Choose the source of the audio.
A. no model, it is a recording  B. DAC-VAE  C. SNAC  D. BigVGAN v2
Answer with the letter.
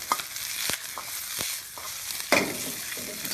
A